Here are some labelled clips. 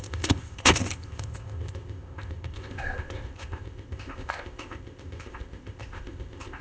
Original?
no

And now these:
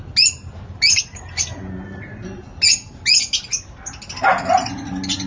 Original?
yes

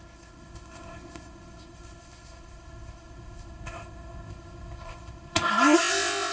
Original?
no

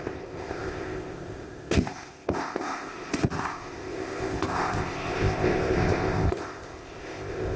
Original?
no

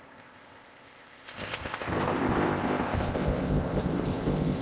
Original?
no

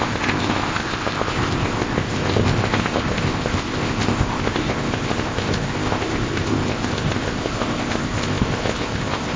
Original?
no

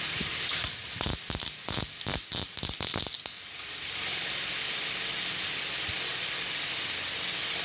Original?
yes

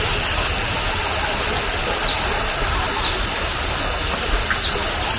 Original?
yes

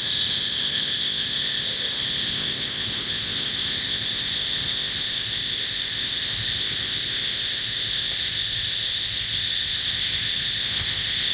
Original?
no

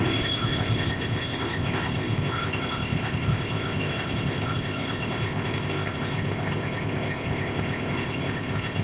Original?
no